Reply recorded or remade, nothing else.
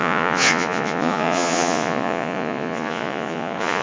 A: remade